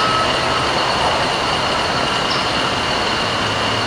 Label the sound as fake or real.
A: real